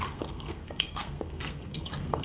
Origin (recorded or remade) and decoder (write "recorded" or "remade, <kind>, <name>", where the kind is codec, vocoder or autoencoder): remade, codec, SNAC